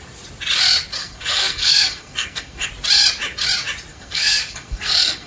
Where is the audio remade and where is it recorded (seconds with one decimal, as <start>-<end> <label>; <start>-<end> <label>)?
0.0-1.0 recorded; 1.0-2.7 remade; 2.7-3.9 recorded; 3.9-5.3 remade

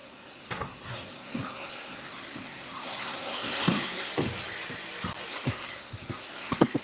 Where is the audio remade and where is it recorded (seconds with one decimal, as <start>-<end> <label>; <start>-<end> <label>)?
0.0-4.1 remade; 4.1-5.3 recorded; 5.3-6.8 remade

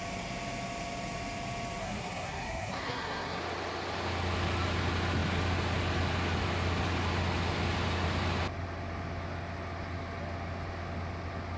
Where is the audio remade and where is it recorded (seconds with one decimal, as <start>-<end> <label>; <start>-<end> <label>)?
0.0-1.8 recorded; 1.8-3.4 remade; 3.4-11.6 recorded

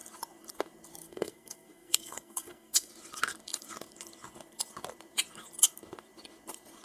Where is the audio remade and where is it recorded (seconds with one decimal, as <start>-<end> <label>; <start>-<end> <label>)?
0.0-1.0 recorded; 1.0-2.9 remade; 2.9-6.8 recorded